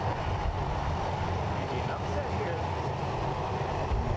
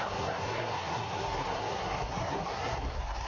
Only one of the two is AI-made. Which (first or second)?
second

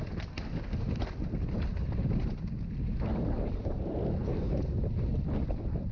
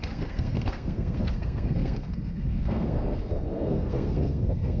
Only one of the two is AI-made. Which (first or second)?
second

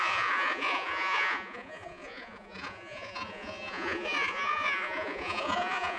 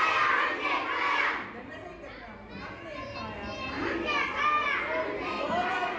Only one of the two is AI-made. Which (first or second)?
first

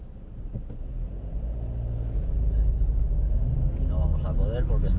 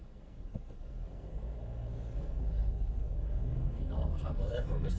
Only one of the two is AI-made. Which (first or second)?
second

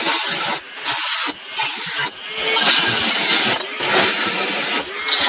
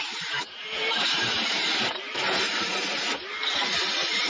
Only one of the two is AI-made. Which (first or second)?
second